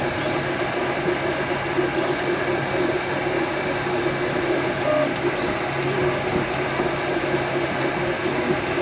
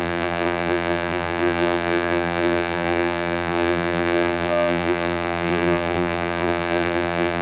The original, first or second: first